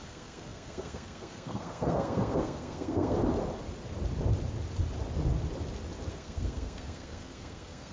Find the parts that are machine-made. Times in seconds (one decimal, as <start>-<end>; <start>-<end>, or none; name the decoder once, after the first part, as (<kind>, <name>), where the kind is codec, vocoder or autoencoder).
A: 0.0-3.2 (codec, SNAC); 6.1-7.9